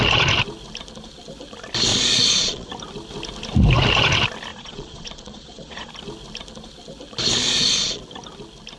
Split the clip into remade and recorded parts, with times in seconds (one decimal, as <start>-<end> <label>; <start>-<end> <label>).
0.0-1.9 recorded; 1.9-2.7 remade; 2.7-4.5 recorded; 4.5-5.9 remade; 5.9-7.4 recorded; 7.4-8.0 remade; 8.0-8.8 recorded